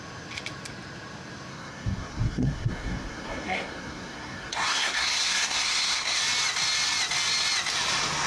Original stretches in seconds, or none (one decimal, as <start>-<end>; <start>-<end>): 0.0-1.5; 6.2-8.3

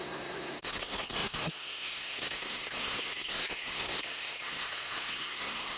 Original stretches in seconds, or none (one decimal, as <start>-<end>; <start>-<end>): none

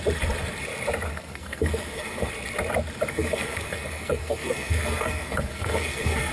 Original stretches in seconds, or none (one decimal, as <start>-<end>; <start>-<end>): 0.0-1.1; 2.3-3.1

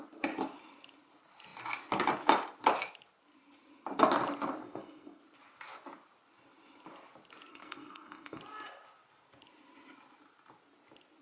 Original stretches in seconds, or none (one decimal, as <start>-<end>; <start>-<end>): 0.0-4.6; 5.2-7.5; 8.4-11.2

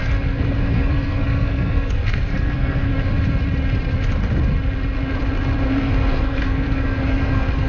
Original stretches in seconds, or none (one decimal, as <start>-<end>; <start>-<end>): 2.9-5.7

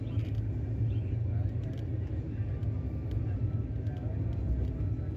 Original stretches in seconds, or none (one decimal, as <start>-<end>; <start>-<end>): 0.0-5.2

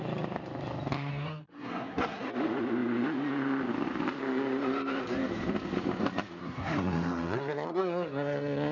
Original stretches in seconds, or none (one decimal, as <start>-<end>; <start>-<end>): 0.0-1.1; 2.3-6.4

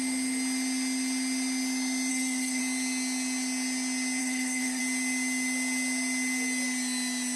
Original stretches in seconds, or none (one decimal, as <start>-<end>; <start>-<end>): 0.0-2.1; 2.6-4.2; 4.8-7.4